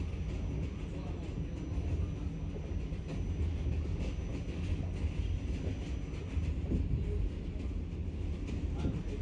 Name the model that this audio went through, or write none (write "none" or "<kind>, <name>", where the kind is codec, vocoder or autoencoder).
none